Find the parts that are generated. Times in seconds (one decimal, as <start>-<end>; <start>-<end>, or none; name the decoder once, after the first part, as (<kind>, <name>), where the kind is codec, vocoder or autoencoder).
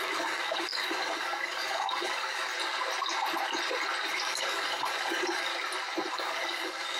0.0-2.5 (codec, DAC); 4.1-5.5; 6.1-7.0